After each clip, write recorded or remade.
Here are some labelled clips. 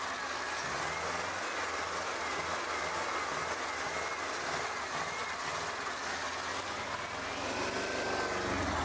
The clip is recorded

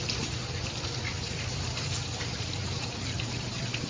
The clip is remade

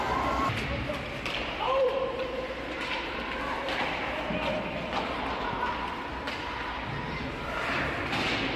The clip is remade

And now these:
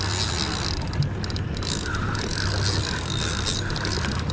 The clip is recorded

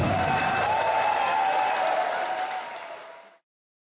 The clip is recorded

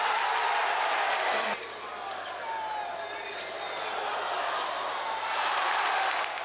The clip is recorded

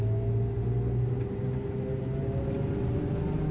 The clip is recorded